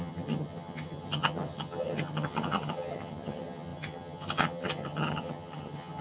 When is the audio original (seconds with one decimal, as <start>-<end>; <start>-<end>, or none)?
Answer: none